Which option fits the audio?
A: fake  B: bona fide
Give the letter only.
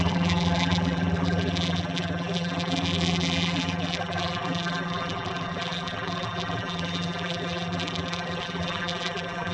A